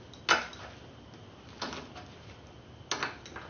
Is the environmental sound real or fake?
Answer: real